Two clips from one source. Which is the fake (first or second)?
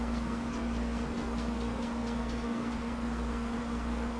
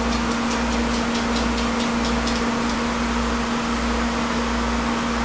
first